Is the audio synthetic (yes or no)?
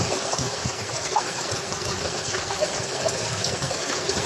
yes